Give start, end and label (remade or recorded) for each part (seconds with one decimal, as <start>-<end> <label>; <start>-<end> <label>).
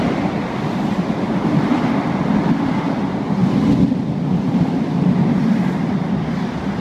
0.0-6.8 recorded